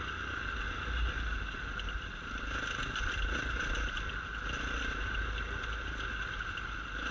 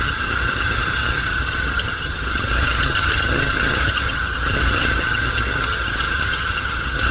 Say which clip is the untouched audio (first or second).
first